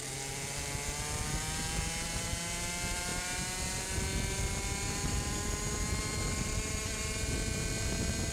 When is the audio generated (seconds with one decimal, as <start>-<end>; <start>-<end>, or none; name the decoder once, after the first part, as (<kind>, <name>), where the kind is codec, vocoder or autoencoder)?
none